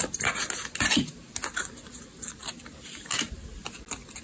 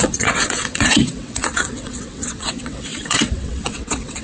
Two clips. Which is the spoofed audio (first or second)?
second